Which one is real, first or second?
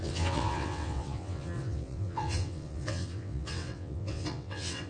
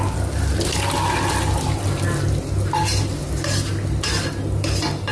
second